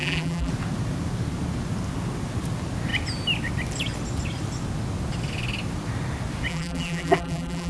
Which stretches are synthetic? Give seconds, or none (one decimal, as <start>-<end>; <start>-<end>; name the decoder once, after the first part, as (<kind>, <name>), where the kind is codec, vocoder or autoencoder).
0.0-0.5 (vocoder, BigVGAN v2); 6.5-7.7